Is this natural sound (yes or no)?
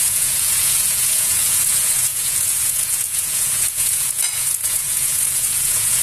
no